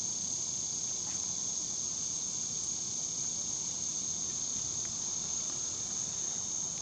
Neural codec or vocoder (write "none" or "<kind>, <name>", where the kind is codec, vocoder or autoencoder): none